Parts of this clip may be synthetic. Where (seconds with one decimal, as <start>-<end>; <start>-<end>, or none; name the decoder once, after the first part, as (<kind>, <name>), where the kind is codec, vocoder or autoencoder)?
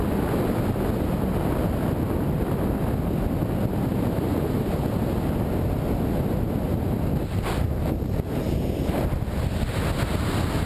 3.9-4.6 (vocoder, BigVGAN v2)